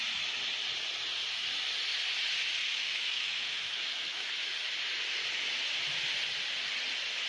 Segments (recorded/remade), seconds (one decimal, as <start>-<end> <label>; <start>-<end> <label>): 0.0-2.6 recorded; 2.6-4.3 remade; 4.3-7.3 recorded